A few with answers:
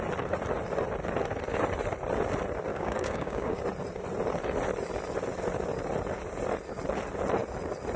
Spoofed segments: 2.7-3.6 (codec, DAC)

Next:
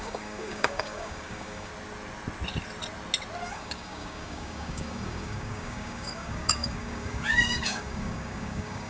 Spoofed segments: 0.0-1.7 (codec, DAC); 3.5-8.9

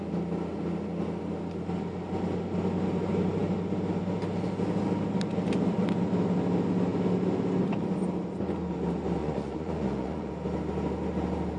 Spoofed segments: 9.2-10.3 (vocoder, Vocos)